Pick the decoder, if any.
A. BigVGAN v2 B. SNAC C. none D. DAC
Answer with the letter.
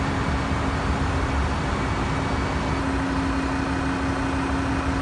C